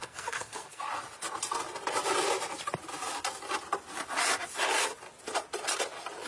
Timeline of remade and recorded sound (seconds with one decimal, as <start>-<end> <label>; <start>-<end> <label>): 0.0-0.8 remade; 0.8-6.3 recorded